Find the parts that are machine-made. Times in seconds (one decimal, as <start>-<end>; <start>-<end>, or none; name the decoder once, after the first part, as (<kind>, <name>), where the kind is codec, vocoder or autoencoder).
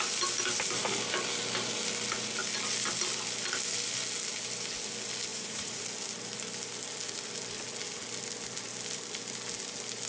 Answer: 5.3-5.8 (vocoder, Vocos)